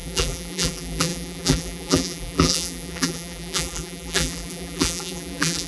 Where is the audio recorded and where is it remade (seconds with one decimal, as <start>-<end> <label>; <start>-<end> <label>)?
0.0-5.7 remade